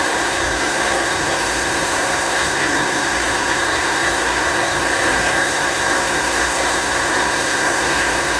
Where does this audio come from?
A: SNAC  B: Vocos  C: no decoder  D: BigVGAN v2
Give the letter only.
A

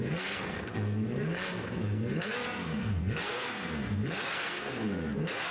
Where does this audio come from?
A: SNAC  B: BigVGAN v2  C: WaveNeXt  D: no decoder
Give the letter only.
A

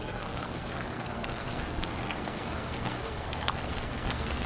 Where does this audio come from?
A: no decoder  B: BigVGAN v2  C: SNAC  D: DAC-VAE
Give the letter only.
C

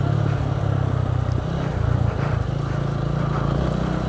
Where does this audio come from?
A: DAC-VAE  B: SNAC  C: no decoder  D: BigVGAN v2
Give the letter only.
C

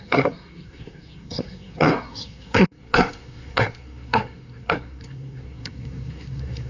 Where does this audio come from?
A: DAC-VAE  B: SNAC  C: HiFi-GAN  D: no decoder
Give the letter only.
B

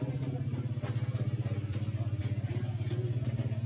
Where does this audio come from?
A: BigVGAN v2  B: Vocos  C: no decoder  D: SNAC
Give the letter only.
C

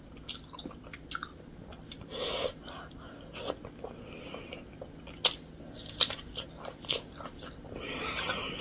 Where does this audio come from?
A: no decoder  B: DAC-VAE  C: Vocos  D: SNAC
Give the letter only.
A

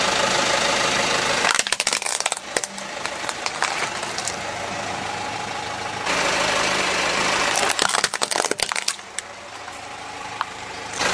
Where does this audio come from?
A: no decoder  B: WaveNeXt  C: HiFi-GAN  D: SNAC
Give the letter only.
A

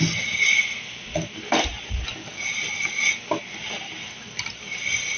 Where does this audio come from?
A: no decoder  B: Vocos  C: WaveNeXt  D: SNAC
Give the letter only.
A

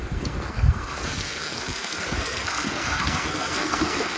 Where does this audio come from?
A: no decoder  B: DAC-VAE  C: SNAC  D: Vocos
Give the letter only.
C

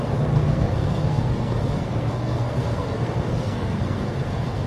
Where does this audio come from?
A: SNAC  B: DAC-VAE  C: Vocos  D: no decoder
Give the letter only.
A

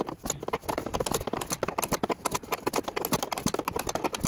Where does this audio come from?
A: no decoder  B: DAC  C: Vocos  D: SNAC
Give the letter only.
A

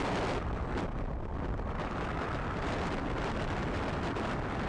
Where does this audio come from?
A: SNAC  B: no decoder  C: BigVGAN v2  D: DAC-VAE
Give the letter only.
B